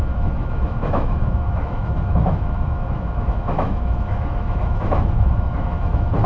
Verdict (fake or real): fake